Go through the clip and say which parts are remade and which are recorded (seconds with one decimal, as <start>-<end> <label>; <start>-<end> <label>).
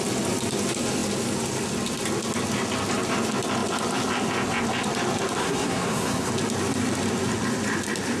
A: 0.0-5.4 recorded; 5.4-6.3 remade; 6.3-8.2 recorded